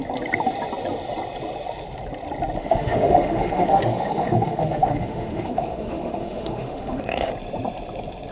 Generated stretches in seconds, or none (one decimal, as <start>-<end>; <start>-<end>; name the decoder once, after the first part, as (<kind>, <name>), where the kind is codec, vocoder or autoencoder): 2.6-7.3 (autoencoder, DAC-VAE)